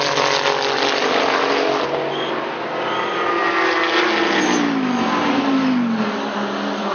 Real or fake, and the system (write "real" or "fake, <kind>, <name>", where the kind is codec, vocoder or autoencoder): real